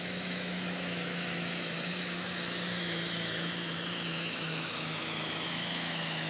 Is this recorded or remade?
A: remade